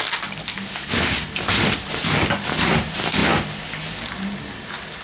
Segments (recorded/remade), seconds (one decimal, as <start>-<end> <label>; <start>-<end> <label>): 0.0-5.0 recorded